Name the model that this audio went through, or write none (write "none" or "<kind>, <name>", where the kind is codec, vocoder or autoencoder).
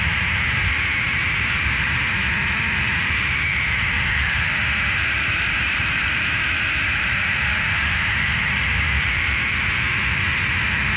vocoder, BigVGAN v2